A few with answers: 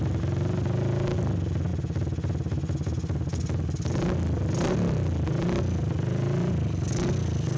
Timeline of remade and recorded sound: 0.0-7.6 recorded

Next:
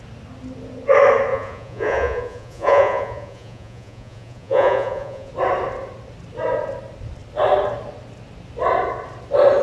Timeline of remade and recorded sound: 0.0-1.3 recorded; 1.3-5.3 remade; 5.3-9.6 recorded

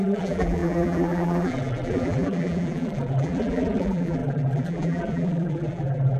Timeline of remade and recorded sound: 0.0-6.2 remade

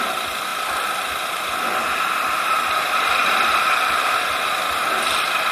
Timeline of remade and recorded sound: 0.0-5.5 recorded

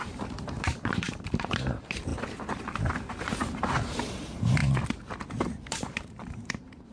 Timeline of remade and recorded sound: 0.0-2.1 remade; 2.1-3.1 recorded; 3.1-4.6 remade; 4.6-5.7 recorded; 5.7-6.9 remade

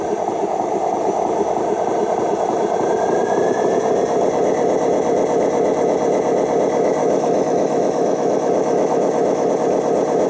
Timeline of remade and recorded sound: 0.0-7.0 recorded; 7.0-9.5 remade; 9.5-10.3 recorded

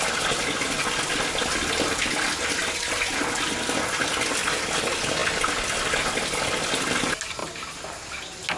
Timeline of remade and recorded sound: 0.0-2.6 recorded; 2.6-4.1 remade; 4.1-8.6 recorded